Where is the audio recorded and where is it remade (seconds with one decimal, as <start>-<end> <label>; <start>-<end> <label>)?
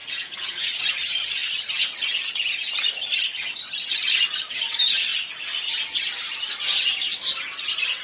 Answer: 0.0-0.9 remade; 0.9-8.0 recorded